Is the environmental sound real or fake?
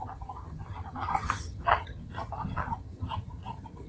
fake